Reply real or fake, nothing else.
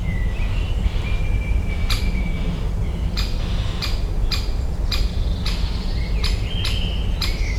real